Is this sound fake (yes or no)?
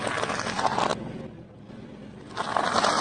no